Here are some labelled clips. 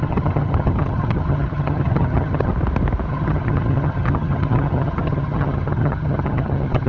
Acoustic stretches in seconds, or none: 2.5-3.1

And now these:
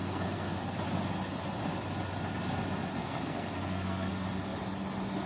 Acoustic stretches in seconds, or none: 0.8-3.0; 4.1-5.3

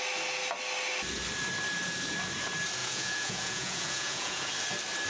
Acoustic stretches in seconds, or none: 0.0-2.8; 4.5-5.1

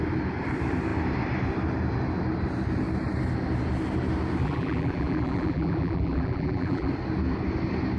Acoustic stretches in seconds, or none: 0.0-4.4; 6.9-8.0

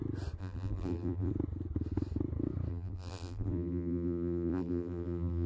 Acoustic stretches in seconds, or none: 0.0-0.4; 1.3-2.7

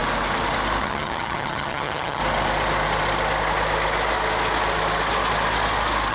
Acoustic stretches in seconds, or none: 0.0-0.8; 2.2-6.1

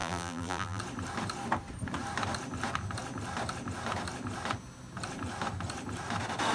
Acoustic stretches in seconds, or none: 0.8-6.5